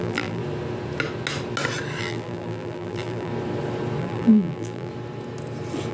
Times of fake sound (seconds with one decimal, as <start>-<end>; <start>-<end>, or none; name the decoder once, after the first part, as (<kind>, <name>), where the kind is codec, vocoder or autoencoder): 0.0-0.4 (vocoder, BigVGAN v2); 2.0-3.3; 4.0-4.9